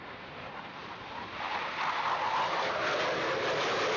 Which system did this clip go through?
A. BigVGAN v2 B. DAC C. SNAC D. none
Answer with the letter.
D